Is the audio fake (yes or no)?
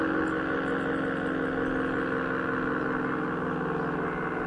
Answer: no